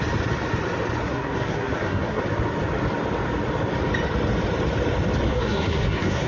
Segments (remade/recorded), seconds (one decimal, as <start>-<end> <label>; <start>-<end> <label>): 0.0-1.0 recorded; 1.0-2.2 remade; 2.2-5.3 recorded; 5.3-6.3 remade